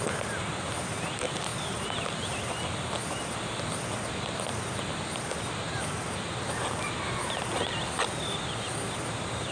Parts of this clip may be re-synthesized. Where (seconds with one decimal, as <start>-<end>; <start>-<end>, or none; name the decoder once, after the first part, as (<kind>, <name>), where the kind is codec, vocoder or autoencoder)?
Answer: none